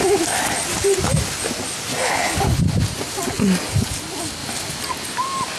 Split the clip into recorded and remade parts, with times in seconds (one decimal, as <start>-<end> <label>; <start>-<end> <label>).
0.0-1.9 recorded; 1.9-2.6 remade; 2.6-5.6 recorded

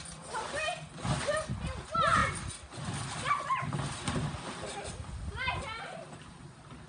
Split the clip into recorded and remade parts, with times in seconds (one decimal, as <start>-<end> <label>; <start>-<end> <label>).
0.0-6.9 recorded